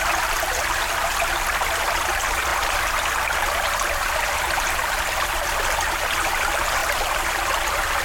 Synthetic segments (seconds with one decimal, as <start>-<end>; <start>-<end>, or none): 6.8-8.0